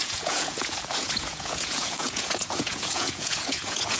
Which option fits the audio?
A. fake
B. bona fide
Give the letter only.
A